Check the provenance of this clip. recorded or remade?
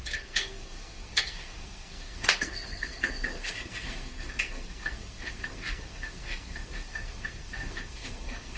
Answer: remade